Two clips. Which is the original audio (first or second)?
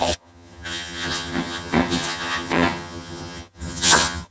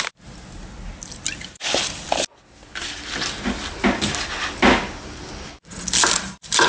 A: second